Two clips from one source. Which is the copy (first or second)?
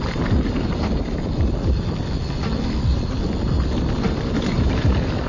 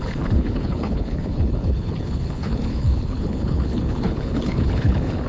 second